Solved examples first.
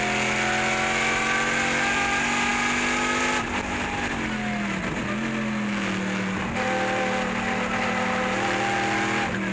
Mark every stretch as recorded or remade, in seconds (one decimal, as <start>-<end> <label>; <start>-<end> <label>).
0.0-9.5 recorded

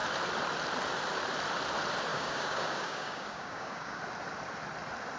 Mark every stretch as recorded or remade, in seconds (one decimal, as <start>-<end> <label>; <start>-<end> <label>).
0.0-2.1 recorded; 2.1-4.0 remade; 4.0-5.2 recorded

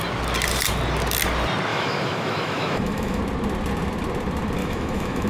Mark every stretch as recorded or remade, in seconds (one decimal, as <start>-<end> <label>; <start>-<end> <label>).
0.0-1.7 recorded; 1.7-3.2 remade; 3.2-4.6 recorded; 4.6-5.3 remade

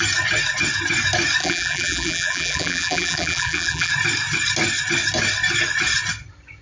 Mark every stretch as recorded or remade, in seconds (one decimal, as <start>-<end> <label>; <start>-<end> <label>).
0.0-1.4 recorded; 1.4-3.9 remade; 3.9-6.6 recorded

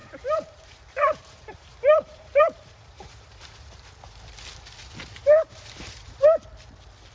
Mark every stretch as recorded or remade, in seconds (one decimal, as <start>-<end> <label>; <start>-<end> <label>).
0.0-3.9 remade; 3.9-5.2 recorded; 5.2-6.4 remade; 6.4-7.1 recorded

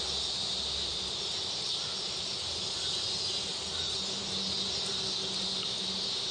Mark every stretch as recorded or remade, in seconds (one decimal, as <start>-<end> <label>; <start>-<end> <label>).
0.0-6.3 recorded

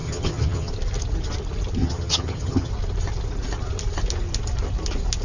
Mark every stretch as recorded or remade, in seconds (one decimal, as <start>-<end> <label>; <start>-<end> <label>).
0.0-0.7 remade; 0.7-1.8 recorded; 1.8-2.7 remade; 2.7-5.2 recorded

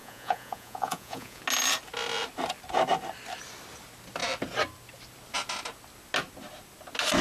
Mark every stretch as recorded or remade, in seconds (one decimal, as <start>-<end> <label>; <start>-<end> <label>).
0.0-1.4 remade; 1.4-7.2 recorded